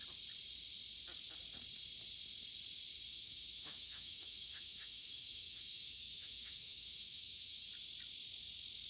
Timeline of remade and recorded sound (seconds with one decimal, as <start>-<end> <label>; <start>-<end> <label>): 0.0-3.1 recorded; 3.1-7.7 remade; 7.7-8.9 recorded